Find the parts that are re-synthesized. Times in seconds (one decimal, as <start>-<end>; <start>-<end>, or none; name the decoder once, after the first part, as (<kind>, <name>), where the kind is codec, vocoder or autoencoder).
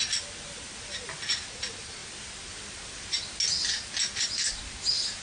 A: none